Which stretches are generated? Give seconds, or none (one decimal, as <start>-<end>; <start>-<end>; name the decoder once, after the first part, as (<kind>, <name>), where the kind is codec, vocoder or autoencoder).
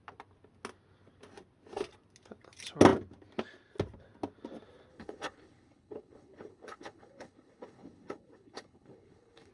4.9-9.5 (codec, HILCodec)